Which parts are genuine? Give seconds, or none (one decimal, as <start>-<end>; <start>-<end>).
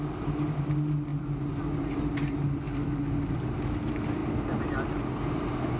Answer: 0.0-5.8